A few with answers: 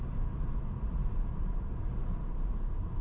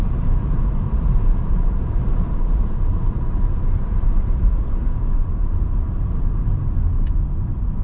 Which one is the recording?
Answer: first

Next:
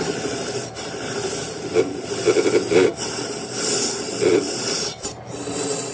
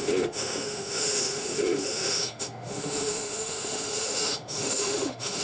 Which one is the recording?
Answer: first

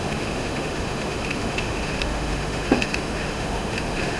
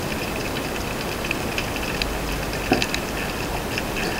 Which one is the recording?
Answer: second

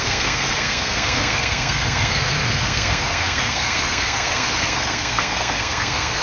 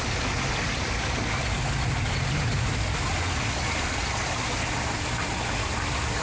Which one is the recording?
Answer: second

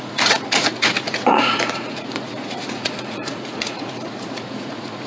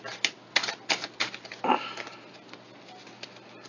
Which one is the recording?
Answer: second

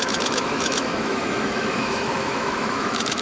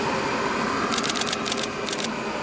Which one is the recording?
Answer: second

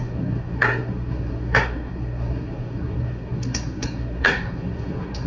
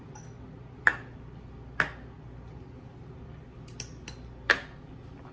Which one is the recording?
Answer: second